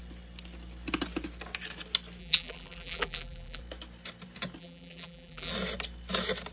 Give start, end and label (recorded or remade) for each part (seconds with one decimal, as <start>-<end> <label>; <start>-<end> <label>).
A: 0.0-2.2 recorded; 2.2-3.6 remade; 3.6-4.6 recorded; 4.6-5.5 remade; 5.5-6.5 recorded